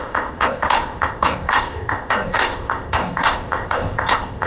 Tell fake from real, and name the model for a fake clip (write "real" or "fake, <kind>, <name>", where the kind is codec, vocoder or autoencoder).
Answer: fake, codec, ZipCodec